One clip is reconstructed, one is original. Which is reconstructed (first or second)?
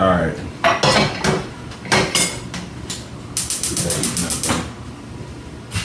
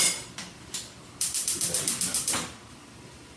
second